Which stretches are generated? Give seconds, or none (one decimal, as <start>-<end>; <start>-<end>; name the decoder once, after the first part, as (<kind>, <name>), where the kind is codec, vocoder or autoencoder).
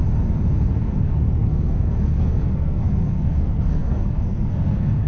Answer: 0.8-5.1 (codec, SNAC)